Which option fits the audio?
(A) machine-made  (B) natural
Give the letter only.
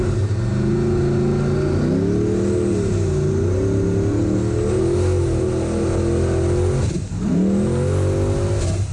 B